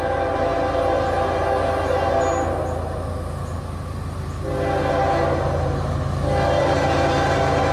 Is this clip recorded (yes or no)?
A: yes